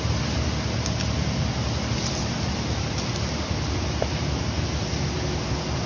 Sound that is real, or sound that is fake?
real